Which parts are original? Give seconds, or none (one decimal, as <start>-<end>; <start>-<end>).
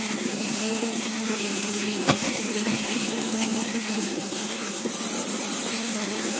4.9-5.7